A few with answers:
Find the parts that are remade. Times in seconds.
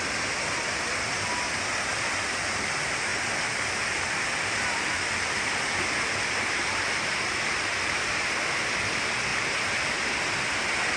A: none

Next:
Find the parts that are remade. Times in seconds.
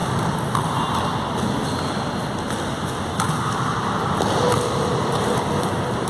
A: none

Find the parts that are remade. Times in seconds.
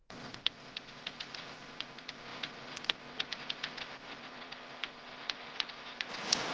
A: 0.0-6.5 (vocoder, Vocos)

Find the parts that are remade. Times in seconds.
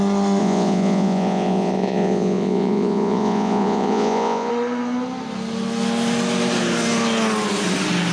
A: 0.4-4.5 (vocoder, Vocos)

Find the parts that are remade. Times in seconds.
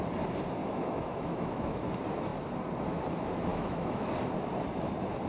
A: 0.6-1.9 (autoencoder, DAC-VAE); 3.5-4.1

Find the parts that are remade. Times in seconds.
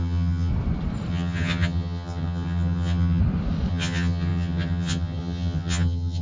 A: 0.0-0.5 (vocoder, HiFi-GAN); 1.1-3.2; 3.7-6.2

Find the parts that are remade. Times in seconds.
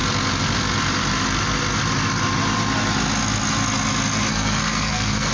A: 4.3-5.3 (codec, SNAC)